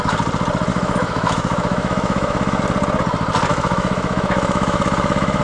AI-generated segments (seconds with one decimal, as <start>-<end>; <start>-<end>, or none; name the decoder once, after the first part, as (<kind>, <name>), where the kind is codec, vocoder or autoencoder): 0.7-2.6 (autoencoder, DAC-VAE); 3.5-5.4